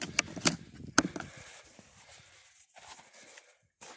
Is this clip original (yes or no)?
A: yes